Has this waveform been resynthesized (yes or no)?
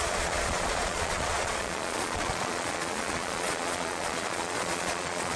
yes